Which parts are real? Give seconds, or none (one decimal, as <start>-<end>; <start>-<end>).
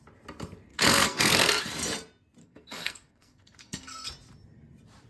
0.0-0.7; 1.6-2.4; 4.1-5.1